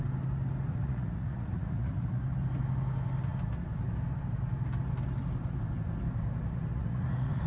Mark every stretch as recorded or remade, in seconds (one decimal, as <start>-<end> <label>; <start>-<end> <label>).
0.0-0.7 recorded; 0.7-2.2 remade; 2.2-6.7 recorded; 6.7-7.5 remade